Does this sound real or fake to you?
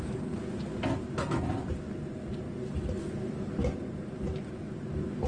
real